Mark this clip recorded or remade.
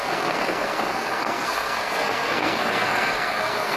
remade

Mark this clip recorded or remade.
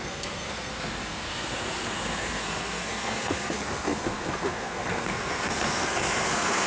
remade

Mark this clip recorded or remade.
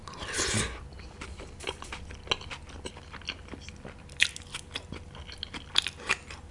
recorded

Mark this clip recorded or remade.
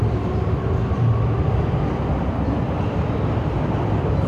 recorded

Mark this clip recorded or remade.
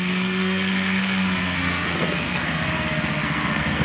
remade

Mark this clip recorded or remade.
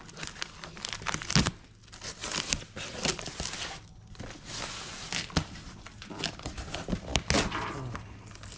recorded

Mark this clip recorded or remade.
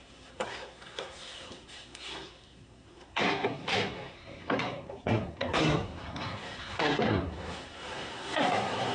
remade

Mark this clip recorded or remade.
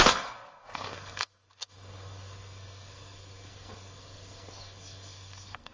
remade